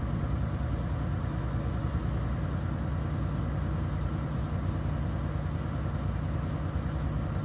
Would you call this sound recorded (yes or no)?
yes